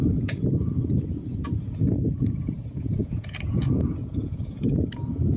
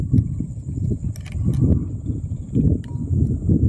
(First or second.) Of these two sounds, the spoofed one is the first